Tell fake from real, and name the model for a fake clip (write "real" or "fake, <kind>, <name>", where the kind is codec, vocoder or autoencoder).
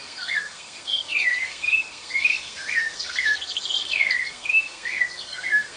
fake, codec, SNAC